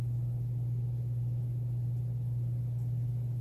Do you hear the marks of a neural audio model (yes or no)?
no